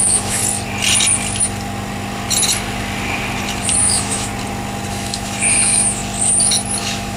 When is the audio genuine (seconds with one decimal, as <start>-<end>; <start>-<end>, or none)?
0.4-3.8; 4.3-4.9; 6.0-6.8